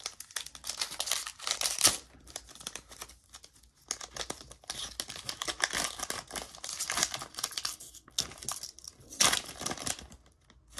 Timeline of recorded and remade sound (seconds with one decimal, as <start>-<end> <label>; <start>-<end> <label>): 0.0-7.7 recorded; 7.7-8.3 remade; 8.3-10.8 recorded